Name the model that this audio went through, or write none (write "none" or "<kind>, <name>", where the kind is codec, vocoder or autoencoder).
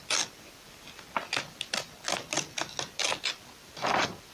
none